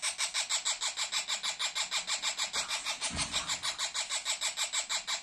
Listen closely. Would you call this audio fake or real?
real